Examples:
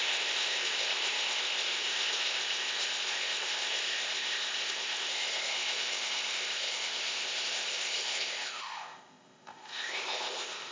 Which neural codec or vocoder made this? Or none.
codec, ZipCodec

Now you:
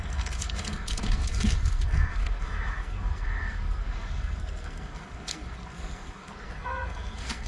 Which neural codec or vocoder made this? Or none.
codec, SNAC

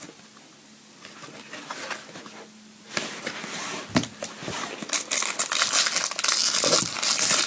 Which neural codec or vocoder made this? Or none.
none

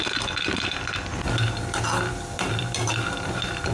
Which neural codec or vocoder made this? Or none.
vocoder, BigVGAN v2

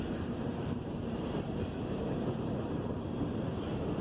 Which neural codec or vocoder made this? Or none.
vocoder, BigVGAN v2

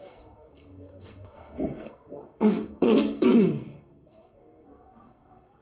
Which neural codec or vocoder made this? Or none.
codec, SNAC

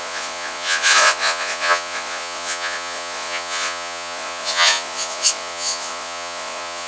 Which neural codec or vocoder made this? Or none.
vocoder, Vocos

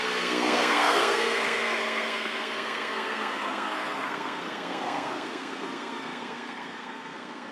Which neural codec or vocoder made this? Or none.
codec, SNAC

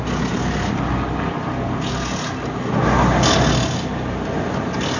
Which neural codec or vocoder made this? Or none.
none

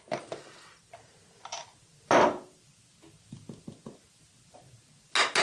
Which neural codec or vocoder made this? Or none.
none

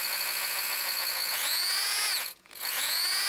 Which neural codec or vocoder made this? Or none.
vocoder, Vocos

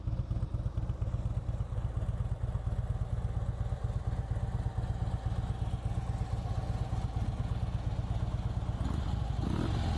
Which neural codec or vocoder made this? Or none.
none